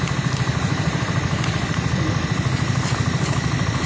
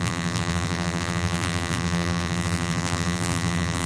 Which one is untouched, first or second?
first